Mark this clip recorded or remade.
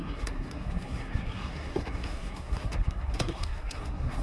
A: remade